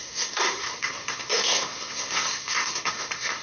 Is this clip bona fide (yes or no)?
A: no